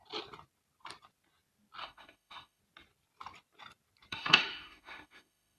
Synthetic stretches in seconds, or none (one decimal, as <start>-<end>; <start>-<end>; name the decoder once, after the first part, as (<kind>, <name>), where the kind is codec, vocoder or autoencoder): 1.8-2.6 (autoencoder, DAC-VAE); 4.1-5.6